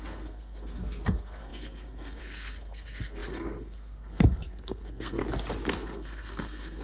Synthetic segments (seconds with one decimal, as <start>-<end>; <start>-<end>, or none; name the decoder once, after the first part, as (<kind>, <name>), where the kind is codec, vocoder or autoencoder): 0.0-5.2 (codec, SNAC); 5.7-6.8